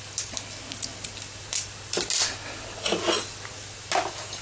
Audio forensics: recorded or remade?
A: recorded